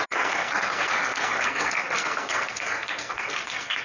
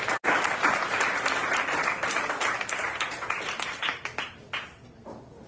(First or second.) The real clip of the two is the second